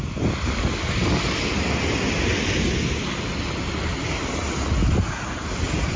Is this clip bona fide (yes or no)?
yes